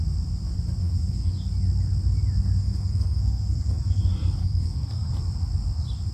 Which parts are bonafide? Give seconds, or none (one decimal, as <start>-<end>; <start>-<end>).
0.0-0.8; 1.3-2.6; 4.0-4.4; 5.1-6.1